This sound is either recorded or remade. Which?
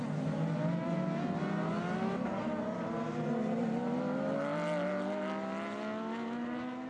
recorded